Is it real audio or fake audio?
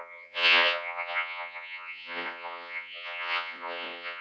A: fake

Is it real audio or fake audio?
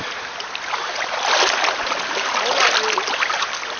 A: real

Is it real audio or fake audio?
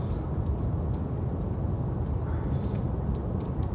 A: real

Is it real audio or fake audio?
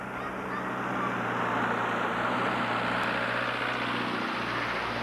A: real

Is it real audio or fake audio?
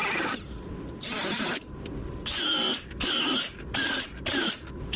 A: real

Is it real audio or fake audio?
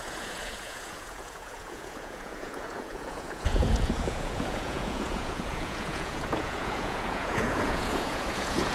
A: fake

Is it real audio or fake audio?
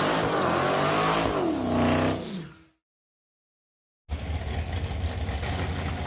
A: real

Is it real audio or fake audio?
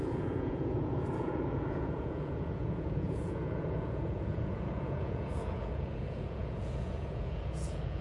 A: fake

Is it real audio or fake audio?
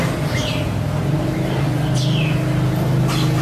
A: real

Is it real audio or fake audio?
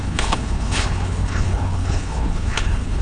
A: fake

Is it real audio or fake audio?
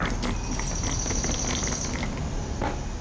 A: real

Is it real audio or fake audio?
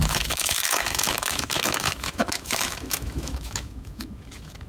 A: fake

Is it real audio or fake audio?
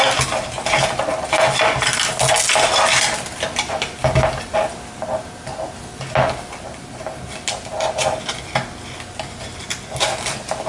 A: real